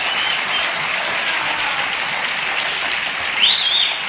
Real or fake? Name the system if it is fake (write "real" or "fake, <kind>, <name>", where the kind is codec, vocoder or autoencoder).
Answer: fake, vocoder, BigVGAN v2